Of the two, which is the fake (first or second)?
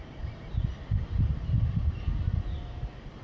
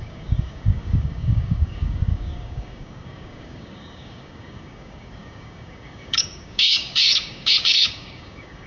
second